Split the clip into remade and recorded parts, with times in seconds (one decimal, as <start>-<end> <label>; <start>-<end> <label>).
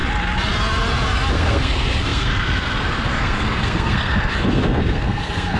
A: 0.0-1.3 recorded; 1.3-5.6 remade